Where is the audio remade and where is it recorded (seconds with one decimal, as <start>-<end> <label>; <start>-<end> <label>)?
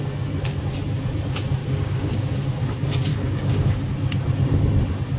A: 0.0-1.6 recorded; 1.6-2.2 remade; 2.2-3.1 recorded; 3.1-3.9 remade; 3.9-5.2 recorded